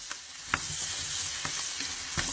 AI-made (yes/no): no